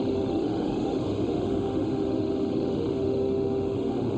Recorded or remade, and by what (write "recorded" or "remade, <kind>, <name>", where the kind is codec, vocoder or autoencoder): remade, autoencoder, DAC-VAE